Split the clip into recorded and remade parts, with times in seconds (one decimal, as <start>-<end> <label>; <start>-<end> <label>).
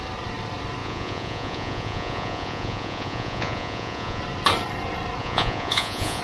0.0-0.8 recorded; 0.8-4.2 remade; 4.2-5.2 recorded; 5.2-6.2 remade